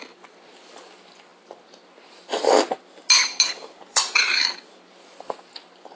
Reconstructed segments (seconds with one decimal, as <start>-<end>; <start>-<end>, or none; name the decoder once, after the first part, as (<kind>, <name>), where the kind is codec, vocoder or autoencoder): 3.6-4.9 (vocoder, BigVGAN v2)